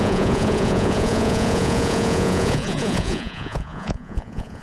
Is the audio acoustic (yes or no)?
no